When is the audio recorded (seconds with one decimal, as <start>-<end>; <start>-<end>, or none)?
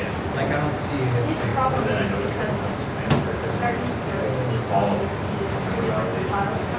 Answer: 0.0-6.8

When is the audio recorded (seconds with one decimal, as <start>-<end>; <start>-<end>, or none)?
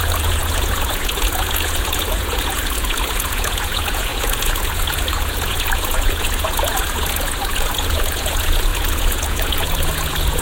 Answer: none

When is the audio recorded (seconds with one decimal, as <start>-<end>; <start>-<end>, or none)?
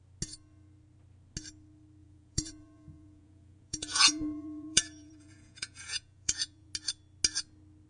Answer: 0.0-2.0; 6.7-7.9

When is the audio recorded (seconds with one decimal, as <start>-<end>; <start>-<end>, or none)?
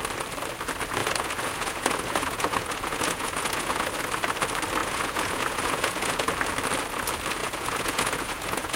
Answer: 0.0-1.0; 3.9-4.8; 6.3-7.4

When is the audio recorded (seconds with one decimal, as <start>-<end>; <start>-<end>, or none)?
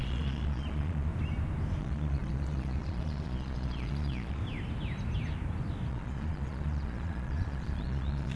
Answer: 1.1-1.8; 4.4-5.9